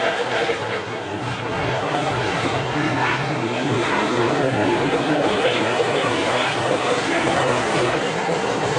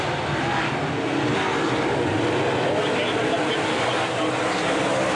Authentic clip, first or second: second